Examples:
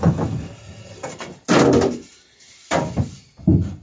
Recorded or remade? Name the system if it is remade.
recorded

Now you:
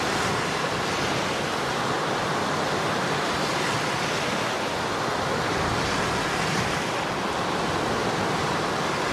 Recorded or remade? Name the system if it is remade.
recorded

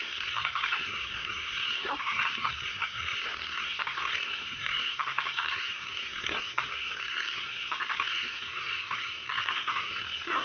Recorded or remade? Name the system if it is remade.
remade, codec, SNAC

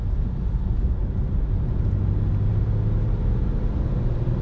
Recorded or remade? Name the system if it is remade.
recorded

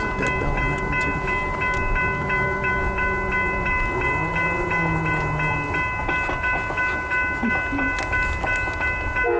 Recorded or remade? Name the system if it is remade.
recorded